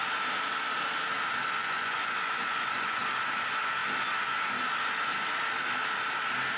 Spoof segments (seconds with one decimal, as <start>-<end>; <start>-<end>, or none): 1.6-3.0